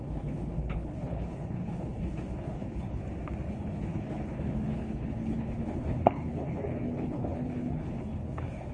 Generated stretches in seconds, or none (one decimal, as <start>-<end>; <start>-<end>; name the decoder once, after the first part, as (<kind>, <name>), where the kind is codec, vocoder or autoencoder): 0.0-3.0 (codec, HILCodec); 3.5-8.7